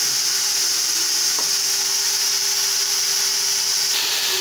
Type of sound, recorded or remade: recorded